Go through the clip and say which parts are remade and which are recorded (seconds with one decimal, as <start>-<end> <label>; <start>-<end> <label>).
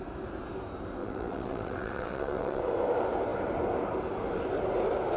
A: 0.0-1.0 recorded; 1.0-2.6 remade; 2.6-5.2 recorded